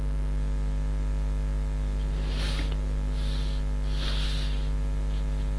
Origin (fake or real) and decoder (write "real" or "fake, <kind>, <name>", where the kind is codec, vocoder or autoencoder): real